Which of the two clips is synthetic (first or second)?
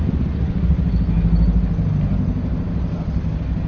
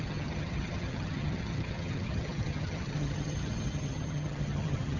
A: second